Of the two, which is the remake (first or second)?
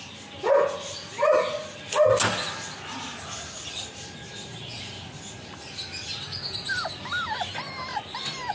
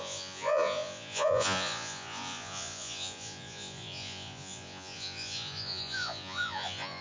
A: second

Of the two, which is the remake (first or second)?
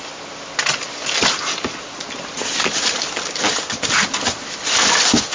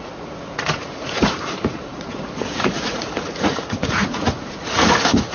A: second